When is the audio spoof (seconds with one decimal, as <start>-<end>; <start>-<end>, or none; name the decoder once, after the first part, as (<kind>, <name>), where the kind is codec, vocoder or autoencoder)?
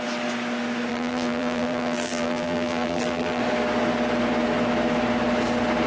0.9-3.4 (vocoder, BigVGAN v2)